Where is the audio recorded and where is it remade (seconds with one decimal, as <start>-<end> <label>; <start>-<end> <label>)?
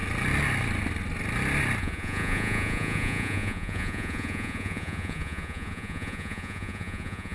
0.0-1.8 recorded; 1.8-7.3 remade